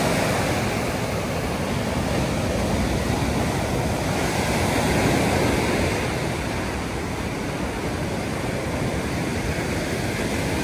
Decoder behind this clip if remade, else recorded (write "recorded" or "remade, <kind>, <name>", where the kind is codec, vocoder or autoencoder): recorded